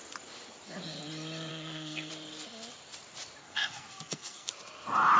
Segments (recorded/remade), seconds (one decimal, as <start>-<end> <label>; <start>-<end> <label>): 0.0-1.5 recorded; 1.5-2.1 remade; 2.1-3.4 recorded; 3.4-4.5 remade; 4.5-5.2 recorded